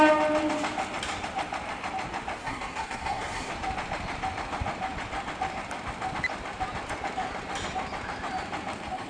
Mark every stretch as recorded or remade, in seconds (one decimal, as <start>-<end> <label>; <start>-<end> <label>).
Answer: 0.0-2.4 recorded; 2.4-3.5 remade; 3.5-9.1 recorded